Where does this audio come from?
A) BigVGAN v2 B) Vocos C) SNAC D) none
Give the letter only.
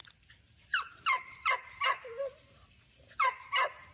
D